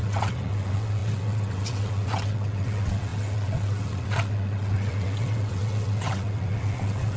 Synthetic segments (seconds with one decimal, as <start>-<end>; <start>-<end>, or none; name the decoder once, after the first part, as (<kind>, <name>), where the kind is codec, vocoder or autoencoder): 0.0-7.2 (vocoder, WaveNeXt)